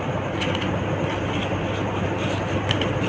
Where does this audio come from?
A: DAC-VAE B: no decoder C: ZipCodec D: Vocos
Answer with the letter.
B